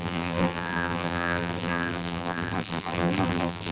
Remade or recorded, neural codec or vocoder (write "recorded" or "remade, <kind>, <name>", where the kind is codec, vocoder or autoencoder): remade, vocoder, BigVGAN v2